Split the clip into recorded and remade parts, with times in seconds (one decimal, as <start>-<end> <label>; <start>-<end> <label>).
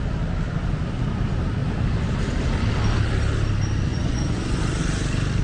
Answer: 0.0-3.9 recorded; 3.9-4.6 remade; 4.6-5.4 recorded